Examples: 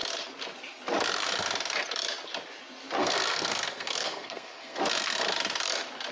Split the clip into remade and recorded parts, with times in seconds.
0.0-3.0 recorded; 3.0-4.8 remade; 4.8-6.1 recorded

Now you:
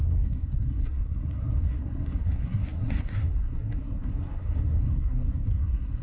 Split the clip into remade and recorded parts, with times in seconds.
0.0-6.0 remade

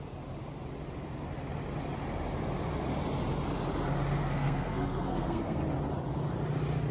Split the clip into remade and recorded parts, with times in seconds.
0.0-4.2 recorded; 4.2-5.6 remade; 5.6-6.9 recorded

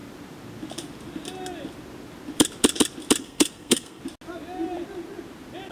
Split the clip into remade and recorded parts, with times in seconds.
0.0-3.2 recorded; 3.2-4.0 remade; 4.0-5.7 recorded

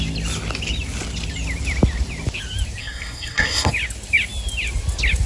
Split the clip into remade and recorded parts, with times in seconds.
0.0-2.8 recorded; 2.8-3.7 remade; 3.7-5.3 recorded

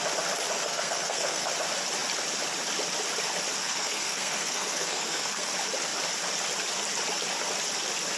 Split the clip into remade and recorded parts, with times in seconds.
0.0-0.6 recorded; 0.6-1.5 remade; 1.5-3.6 recorded; 3.6-5.5 remade; 5.5-8.2 recorded

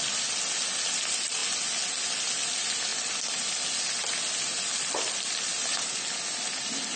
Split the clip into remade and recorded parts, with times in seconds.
0.0-7.0 recorded